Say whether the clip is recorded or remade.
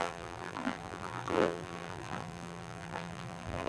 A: remade